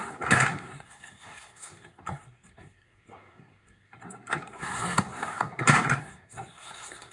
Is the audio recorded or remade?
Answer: remade